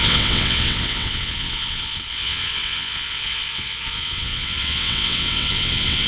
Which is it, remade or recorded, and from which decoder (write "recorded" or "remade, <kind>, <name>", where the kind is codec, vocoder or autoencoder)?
remade, vocoder, WaveNeXt